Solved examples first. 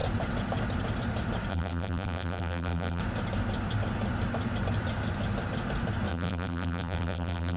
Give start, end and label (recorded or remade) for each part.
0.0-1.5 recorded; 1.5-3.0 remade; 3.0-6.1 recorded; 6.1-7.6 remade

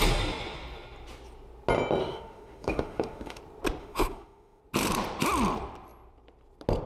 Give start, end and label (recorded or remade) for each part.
0.0-2.0 recorded; 2.0-3.4 remade; 3.4-3.8 recorded; 3.8-4.6 remade; 4.6-6.9 recorded